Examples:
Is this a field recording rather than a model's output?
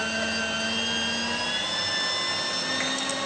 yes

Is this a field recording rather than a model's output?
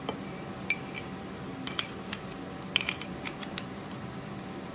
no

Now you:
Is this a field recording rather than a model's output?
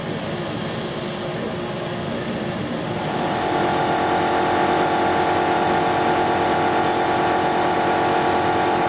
yes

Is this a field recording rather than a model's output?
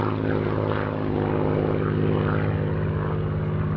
yes